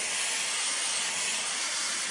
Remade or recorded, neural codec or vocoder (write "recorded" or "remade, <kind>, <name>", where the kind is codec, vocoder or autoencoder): recorded